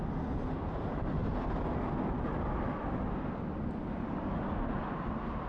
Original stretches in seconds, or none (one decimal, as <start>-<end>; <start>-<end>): 0.0-5.5